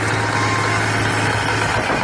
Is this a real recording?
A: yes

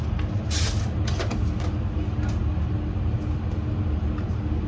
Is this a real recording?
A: yes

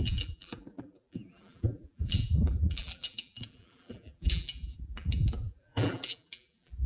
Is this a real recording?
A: no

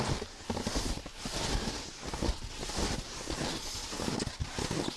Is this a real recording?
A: yes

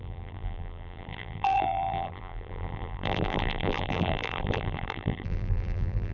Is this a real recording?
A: no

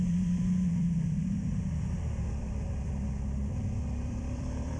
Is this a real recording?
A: no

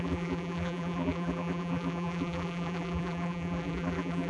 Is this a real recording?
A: no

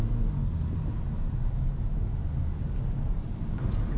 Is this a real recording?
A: yes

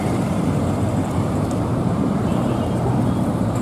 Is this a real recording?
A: no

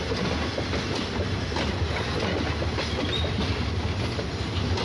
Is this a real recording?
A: yes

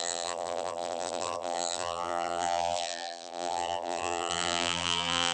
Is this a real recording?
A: no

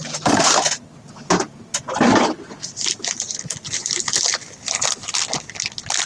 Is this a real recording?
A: yes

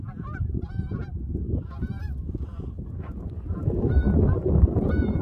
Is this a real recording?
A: yes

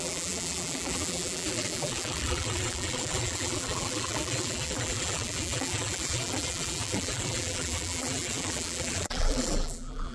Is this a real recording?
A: no